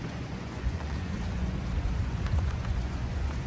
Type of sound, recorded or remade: remade